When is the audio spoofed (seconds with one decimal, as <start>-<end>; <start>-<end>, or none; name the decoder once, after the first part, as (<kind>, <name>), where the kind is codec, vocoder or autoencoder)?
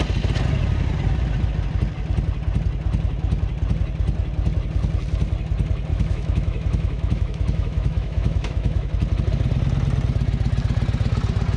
5.9-8.9 (autoencoder, DAC-VAE)